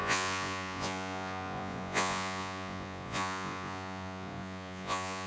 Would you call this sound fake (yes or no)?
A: yes